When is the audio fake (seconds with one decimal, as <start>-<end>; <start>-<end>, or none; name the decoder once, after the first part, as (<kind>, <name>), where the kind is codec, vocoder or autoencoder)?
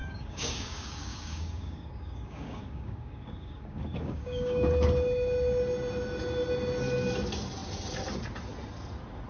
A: 0.0-4.7 (codec, DAC)